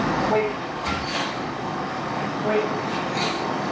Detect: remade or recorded remade